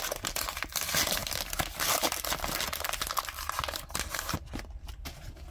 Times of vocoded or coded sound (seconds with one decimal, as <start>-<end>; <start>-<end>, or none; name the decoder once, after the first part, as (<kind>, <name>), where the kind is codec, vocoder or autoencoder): none